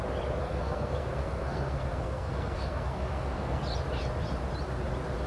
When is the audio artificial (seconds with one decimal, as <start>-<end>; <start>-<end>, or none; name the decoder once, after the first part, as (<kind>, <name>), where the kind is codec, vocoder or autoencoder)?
0.4-3.6 (codec, SNAC)